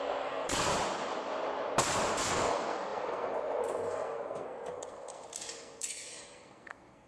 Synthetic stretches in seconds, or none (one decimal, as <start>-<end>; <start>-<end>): 0.0-0.7; 2.3-7.1